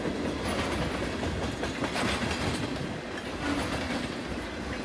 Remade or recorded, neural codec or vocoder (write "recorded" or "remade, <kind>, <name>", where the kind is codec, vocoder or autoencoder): recorded